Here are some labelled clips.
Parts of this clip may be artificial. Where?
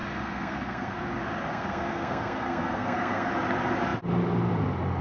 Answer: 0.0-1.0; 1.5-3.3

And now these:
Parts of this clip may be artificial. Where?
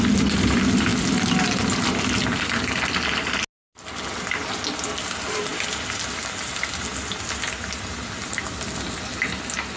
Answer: none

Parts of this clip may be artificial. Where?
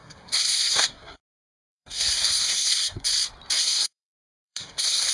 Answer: 0.0-3.1; 3.6-5.1